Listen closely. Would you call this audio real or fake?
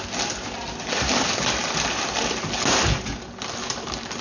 real